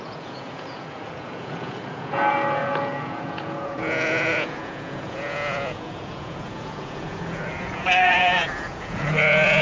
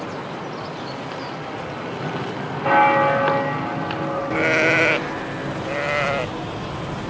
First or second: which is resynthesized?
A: first